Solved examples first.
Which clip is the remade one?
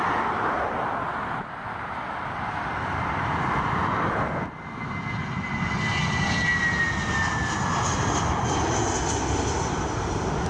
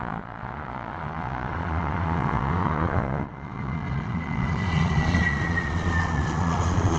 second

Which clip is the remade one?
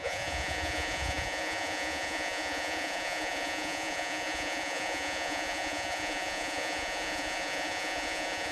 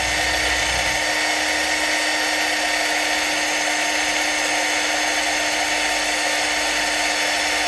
first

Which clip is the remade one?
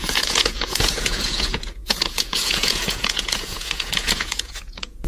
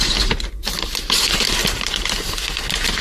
first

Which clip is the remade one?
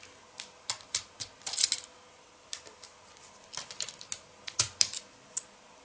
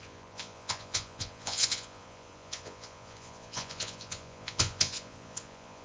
second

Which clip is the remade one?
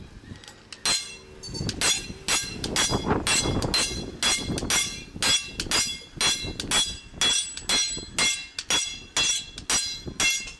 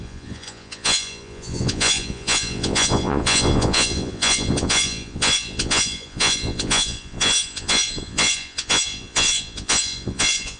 second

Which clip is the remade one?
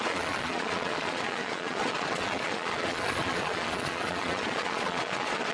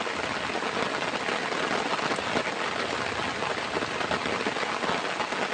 first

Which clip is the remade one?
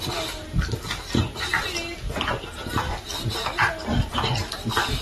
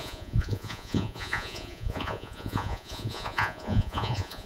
second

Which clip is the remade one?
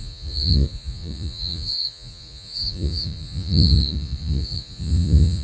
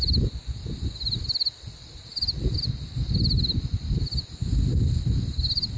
first